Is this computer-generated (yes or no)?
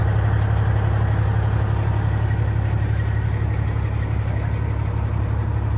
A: no